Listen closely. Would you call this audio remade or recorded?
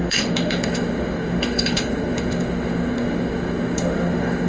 remade